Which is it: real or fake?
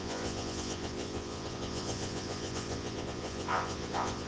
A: fake